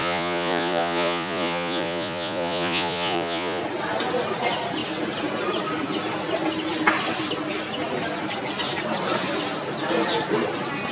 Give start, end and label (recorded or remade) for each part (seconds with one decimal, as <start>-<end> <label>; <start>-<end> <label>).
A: 0.0-3.6 remade; 3.6-10.9 recorded